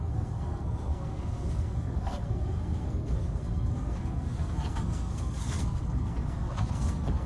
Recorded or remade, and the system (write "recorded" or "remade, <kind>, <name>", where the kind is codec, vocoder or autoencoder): remade, codec, SNAC